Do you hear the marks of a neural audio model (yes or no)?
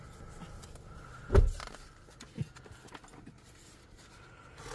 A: no